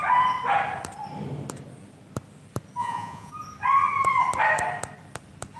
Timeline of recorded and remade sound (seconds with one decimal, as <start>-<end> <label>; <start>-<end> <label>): 0.0-2.8 recorded; 2.8-3.3 remade; 3.3-5.6 recorded